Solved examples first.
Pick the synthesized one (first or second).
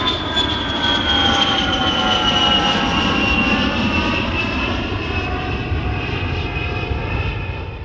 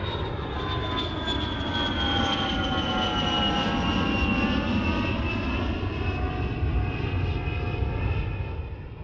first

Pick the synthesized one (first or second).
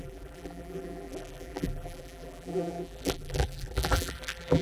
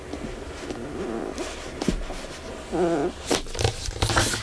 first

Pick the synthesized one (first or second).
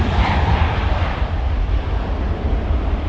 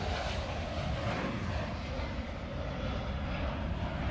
first